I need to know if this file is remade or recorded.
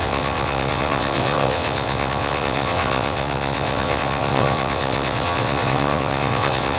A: remade